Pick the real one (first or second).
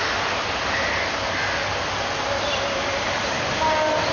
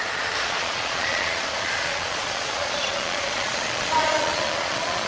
first